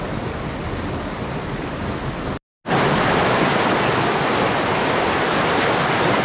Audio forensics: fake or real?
real